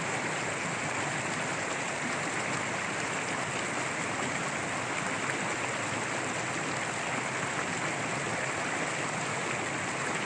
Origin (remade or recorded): recorded